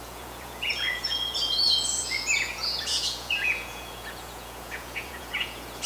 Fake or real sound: fake